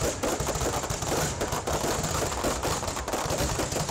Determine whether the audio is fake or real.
real